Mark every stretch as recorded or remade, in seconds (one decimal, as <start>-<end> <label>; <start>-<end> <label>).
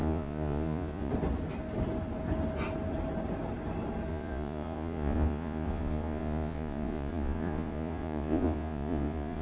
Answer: 0.0-1.1 remade; 1.1-4.1 recorded; 4.1-9.4 remade